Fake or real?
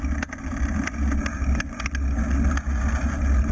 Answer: real